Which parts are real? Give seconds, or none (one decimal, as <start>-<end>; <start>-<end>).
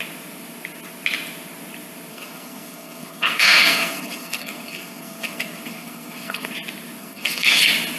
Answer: 0.0-2.1; 6.5-7.0; 7.6-8.0